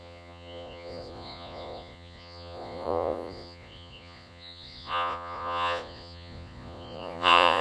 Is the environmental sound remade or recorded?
remade